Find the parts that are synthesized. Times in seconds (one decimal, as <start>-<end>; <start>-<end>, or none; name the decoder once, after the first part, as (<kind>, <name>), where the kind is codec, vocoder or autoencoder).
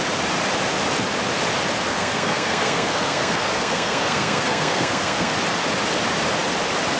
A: 1.9-5.3 (codec, SNAC)